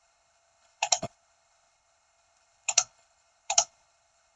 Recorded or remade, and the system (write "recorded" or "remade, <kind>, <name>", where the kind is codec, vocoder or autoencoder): remade, codec, HILCodec